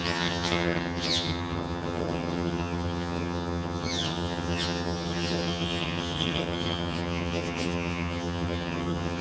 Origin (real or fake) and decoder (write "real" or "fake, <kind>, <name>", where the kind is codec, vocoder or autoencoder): fake, vocoder, HiFi-GAN